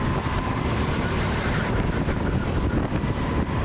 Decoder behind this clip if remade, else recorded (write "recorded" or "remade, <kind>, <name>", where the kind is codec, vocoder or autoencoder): remade, vocoder, BigVGAN v2